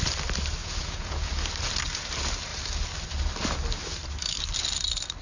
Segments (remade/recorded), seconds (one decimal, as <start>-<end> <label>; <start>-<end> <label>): 0.0-0.6 recorded; 0.6-1.3 remade; 1.3-5.2 recorded